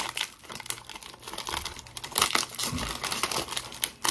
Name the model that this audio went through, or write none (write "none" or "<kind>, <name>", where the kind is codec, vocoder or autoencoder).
none